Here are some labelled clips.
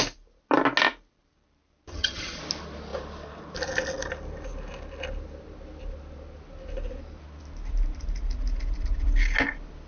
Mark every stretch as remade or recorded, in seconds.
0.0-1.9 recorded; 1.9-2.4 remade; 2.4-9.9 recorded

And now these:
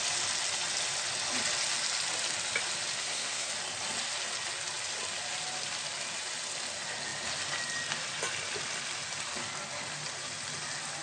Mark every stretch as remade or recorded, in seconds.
0.0-3.0 recorded; 3.0-3.5 remade; 3.5-11.0 recorded

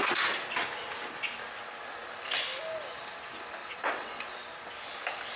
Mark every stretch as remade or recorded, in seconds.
0.0-3.6 recorded; 3.6-4.2 remade; 4.2-5.4 recorded

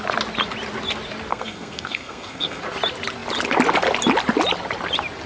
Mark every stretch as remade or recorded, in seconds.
0.0-1.3 recorded; 1.3-2.6 remade; 2.6-5.3 recorded

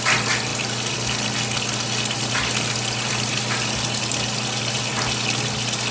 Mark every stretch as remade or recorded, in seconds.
0.0-5.9 recorded

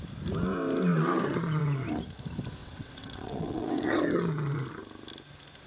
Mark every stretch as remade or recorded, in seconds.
0.0-2.6 recorded; 2.6-4.0 remade; 4.0-5.7 recorded

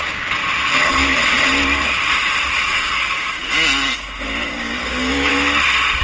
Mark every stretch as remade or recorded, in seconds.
0.0-0.4 remade; 0.4-2.5 recorded; 2.5-3.4 remade; 3.4-4.5 recorded; 4.5-5.3 remade; 5.3-6.0 recorded